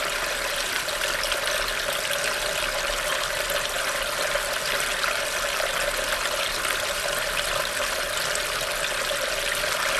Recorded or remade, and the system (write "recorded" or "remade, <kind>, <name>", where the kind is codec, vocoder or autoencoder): recorded